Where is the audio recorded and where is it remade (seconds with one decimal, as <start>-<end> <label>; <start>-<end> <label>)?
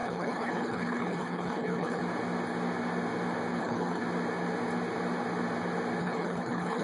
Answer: 0.0-2.0 remade; 2.0-3.6 recorded; 3.6-4.0 remade; 4.0-6.0 recorded; 6.0-6.8 remade